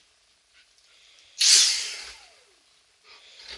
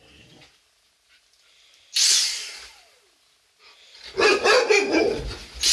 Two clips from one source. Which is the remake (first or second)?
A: first